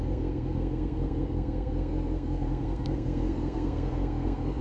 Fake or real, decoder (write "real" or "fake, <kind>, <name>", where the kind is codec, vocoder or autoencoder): fake, codec, SNAC